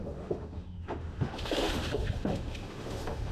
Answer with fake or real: fake